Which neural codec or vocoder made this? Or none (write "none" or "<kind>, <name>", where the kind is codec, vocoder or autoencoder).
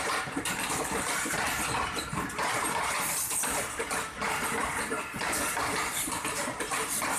vocoder, BigVGAN v2